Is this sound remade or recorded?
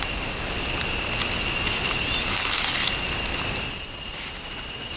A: recorded